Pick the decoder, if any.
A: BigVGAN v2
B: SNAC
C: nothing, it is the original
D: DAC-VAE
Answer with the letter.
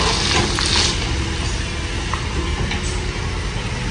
C